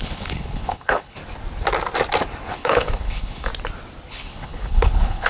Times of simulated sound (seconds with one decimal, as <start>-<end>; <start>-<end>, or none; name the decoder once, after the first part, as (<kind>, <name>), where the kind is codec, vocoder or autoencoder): 0.0-1.2 (codec, HILCodec); 2.5-3.5; 4.1-5.3